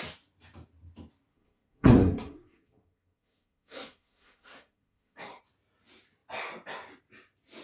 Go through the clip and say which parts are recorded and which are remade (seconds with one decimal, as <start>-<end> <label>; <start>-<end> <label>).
0.0-1.3 recorded; 1.3-5.4 remade; 5.4-7.6 recorded